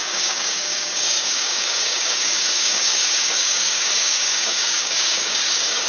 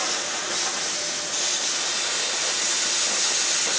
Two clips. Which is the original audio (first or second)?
second